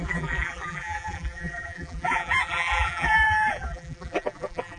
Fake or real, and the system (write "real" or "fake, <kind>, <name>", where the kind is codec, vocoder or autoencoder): fake, vocoder, BigVGAN v2